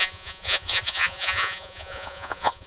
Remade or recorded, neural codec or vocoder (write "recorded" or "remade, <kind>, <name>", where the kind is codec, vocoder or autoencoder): remade, vocoder, Vocos